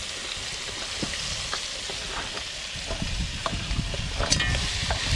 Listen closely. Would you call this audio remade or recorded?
recorded